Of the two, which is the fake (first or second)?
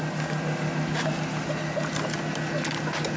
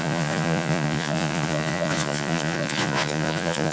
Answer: second